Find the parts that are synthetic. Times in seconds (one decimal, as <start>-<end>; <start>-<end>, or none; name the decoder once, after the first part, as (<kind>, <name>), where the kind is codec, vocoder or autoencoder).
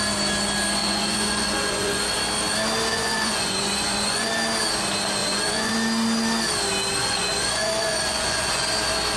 0.8-2.0 (vocoder, Vocos); 2.9-4.3; 5.2-5.7; 7.0-8.7